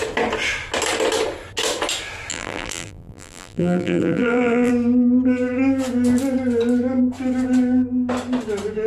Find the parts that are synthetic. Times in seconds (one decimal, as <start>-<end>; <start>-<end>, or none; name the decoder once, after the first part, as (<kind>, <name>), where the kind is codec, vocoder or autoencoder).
2.3-4.7 (vocoder, BigVGAN v2)